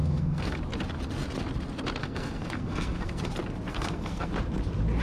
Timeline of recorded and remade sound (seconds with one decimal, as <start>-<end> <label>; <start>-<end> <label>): 0.0-0.6 remade; 0.6-2.0 recorded; 2.0-3.3 remade; 3.3-3.7 recorded; 3.7-4.3 remade; 4.3-5.0 recorded